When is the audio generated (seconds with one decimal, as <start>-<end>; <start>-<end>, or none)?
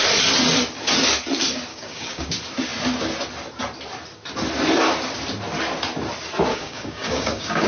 1.7-2.3; 6.5-7.7